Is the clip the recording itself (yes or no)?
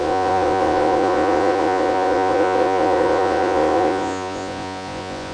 no